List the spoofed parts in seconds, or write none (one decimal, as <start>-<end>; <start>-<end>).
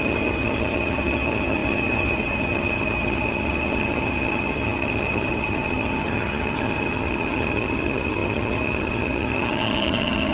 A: 0.0-10.3